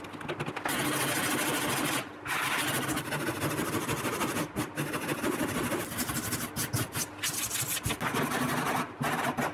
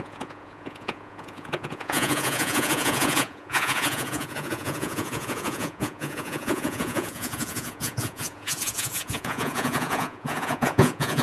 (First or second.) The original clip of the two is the first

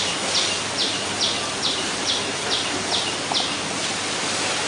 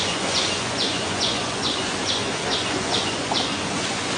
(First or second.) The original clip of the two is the first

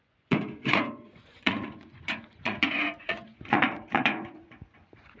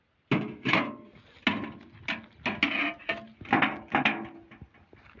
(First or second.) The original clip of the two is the second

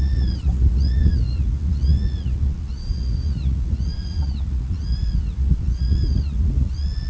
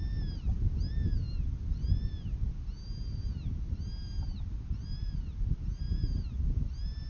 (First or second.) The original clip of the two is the second